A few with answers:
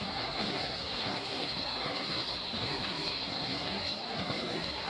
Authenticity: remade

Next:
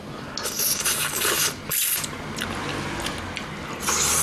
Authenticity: recorded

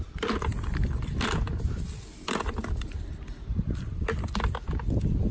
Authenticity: remade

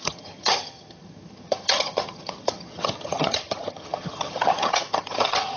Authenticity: remade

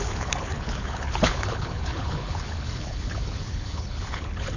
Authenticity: remade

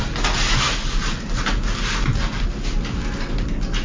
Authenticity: recorded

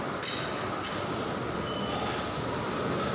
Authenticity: recorded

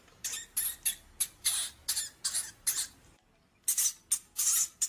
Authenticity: recorded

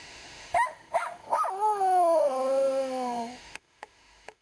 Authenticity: remade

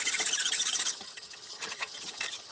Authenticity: remade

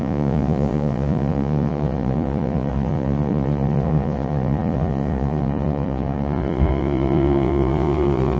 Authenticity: remade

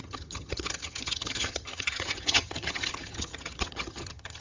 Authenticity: remade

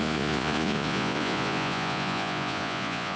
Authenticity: remade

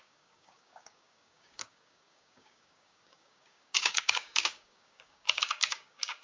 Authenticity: remade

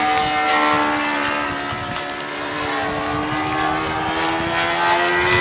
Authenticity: recorded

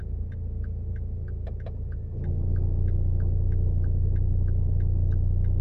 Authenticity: recorded